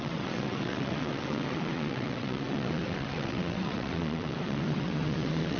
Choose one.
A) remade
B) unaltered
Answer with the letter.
A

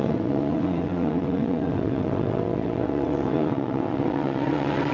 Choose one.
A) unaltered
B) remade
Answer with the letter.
B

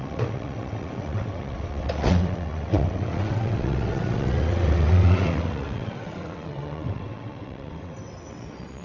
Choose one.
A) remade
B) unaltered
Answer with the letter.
A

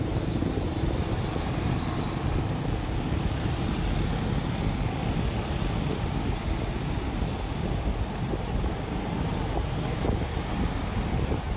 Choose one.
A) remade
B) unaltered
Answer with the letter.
B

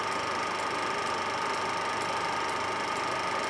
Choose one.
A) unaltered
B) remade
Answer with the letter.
A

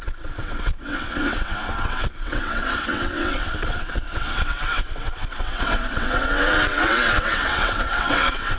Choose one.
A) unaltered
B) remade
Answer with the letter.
B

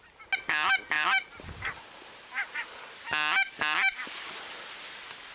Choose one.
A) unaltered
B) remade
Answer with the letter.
A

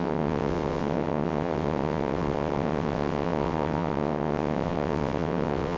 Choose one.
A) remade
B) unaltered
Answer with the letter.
A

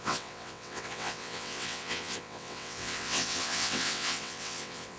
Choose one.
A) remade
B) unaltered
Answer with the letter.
A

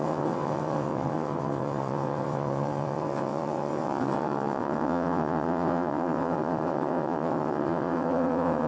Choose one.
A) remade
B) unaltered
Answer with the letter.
A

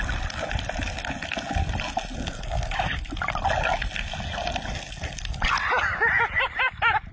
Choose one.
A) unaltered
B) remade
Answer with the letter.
A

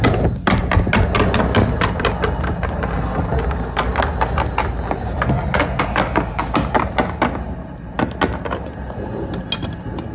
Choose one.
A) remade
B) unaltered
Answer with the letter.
B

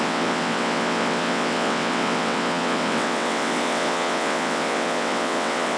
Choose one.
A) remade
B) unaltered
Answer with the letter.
A